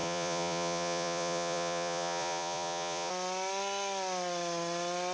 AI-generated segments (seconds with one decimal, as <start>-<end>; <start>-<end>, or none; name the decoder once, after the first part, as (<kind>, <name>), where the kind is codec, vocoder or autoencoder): 0.0-3.1 (vocoder, Vocos)